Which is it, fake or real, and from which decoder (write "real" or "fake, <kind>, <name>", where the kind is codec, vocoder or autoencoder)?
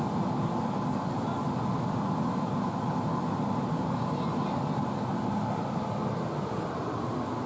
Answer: real